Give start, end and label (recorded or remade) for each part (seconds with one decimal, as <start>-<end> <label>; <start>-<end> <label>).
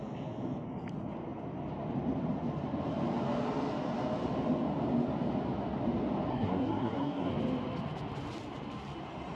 0.0-6.3 recorded; 6.3-7.3 remade; 7.3-9.4 recorded